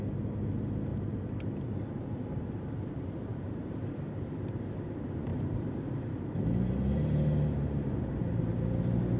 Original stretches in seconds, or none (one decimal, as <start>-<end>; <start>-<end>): 0.0-0.9; 1.5-3.3; 3.8-5.3; 8.4-9.2